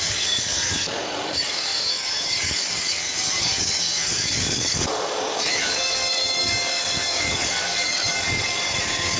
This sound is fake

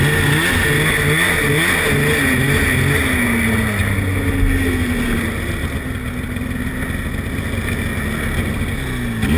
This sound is real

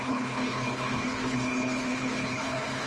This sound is fake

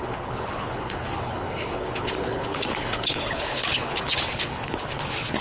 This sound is fake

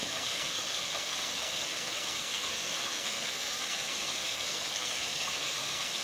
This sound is fake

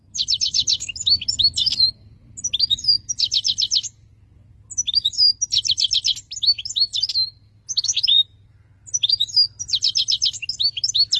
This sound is real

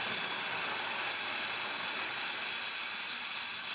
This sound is real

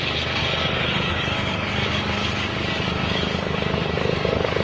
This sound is fake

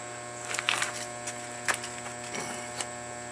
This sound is real